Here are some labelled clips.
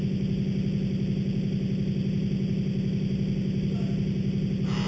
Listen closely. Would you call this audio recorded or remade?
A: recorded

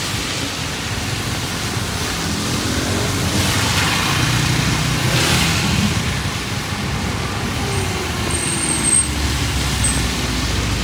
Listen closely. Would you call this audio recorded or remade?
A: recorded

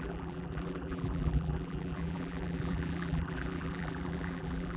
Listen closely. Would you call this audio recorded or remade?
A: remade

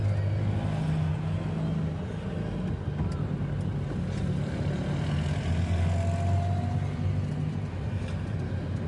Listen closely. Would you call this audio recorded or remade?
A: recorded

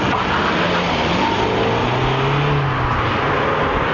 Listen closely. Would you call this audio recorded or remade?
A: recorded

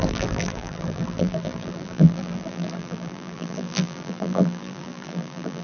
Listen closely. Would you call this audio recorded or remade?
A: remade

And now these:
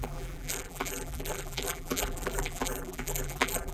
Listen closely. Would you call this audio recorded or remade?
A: remade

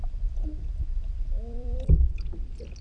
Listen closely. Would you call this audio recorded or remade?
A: remade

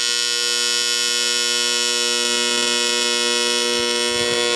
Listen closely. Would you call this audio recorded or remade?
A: recorded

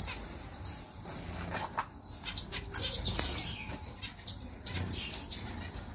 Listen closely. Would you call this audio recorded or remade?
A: recorded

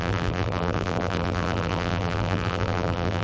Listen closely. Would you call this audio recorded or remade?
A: remade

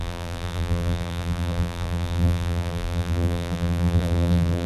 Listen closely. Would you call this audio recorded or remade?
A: remade